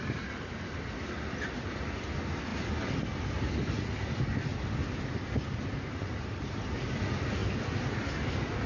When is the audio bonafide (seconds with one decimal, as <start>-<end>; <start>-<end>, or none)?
0.0-8.7